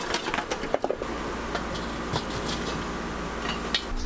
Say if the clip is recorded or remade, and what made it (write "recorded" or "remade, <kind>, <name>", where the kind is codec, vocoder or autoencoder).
recorded